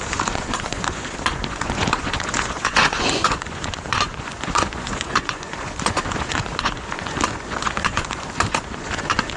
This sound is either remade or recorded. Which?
remade